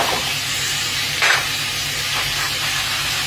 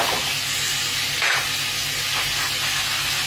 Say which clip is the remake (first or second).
first